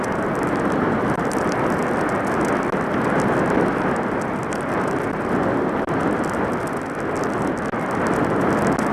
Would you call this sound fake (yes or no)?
no